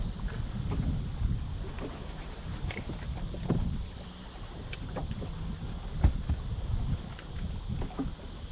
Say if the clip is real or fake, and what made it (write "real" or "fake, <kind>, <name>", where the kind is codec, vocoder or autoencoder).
real